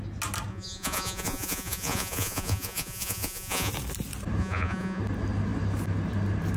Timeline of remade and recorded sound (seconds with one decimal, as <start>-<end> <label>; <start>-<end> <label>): 0.0-0.5 recorded; 0.5-3.7 remade; 3.7-4.4 recorded; 4.4-5.0 remade; 5.0-6.6 recorded

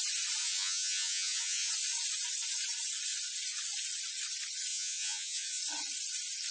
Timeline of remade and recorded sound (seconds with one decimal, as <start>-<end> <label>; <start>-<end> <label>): 0.0-0.4 recorded; 0.4-1.7 remade; 1.7-4.7 recorded; 4.7-5.6 remade; 5.6-6.5 recorded

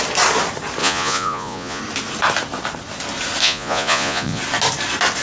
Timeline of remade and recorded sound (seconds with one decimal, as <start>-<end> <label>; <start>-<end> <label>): 0.0-0.8 recorded; 0.8-1.8 remade; 1.8-3.4 recorded; 3.4-4.4 remade; 4.4-5.2 recorded

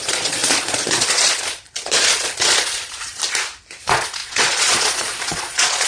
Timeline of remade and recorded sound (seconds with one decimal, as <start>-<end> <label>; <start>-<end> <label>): 0.0-3.2 remade; 3.2-3.8 recorded; 3.8-5.9 remade

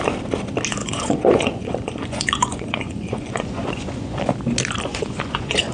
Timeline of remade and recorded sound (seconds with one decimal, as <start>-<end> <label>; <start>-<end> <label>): 0.0-0.8 recorded; 0.8-4.2 remade; 4.2-4.9 recorded; 4.9-5.7 remade